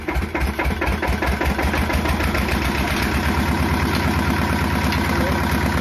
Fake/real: real